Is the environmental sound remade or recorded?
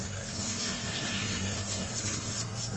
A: remade